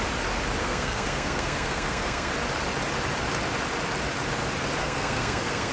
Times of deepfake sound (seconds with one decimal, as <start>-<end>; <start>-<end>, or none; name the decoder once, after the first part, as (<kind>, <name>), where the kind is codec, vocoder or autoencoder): 0.6-2.3 (codec, SNAC); 4.8-5.7